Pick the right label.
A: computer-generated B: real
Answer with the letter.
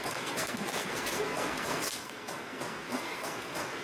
A